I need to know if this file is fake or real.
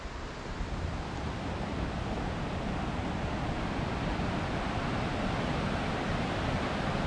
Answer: real